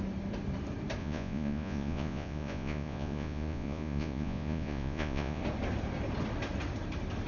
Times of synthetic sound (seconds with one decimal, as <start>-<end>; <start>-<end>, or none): 1.0-5.4